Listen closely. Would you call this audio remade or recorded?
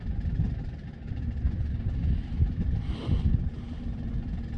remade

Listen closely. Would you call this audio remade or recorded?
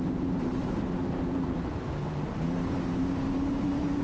remade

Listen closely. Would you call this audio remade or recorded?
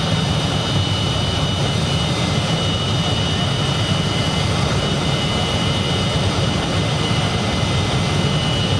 remade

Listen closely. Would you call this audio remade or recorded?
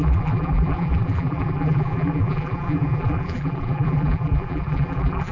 remade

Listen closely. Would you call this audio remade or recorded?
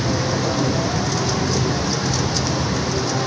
recorded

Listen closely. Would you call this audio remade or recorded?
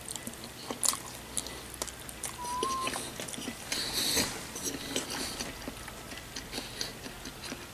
recorded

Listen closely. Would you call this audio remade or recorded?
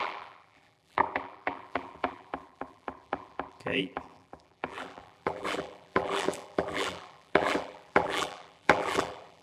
remade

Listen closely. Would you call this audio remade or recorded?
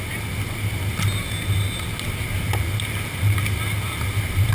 recorded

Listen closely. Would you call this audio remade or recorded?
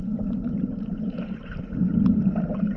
remade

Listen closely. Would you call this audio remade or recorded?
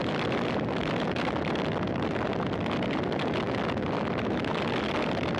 remade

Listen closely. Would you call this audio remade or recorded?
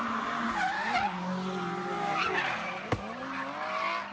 recorded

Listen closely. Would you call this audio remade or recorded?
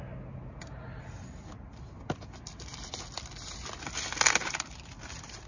recorded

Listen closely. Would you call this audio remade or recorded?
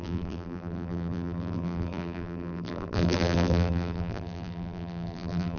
remade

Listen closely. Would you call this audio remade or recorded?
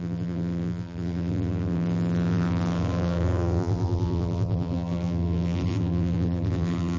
remade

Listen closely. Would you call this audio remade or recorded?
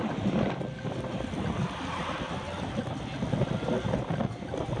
remade